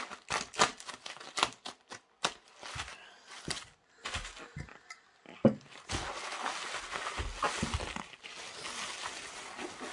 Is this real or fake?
real